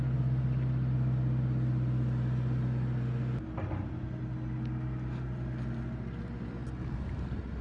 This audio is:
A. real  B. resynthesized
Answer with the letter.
A